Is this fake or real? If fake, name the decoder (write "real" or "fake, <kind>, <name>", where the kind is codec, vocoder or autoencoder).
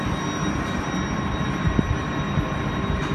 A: real